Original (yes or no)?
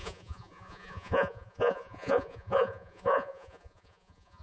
no